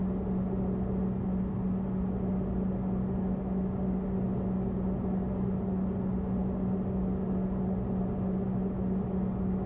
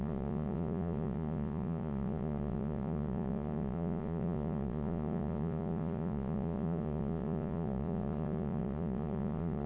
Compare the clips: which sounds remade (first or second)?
second